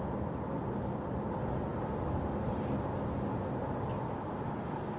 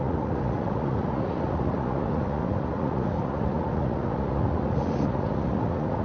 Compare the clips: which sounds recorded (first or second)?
first